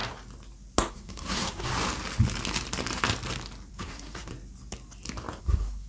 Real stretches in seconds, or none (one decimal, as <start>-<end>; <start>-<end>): 0.0-0.9; 1.7-3.7; 4.3-5.4